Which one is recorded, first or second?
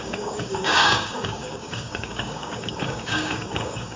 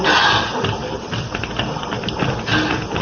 second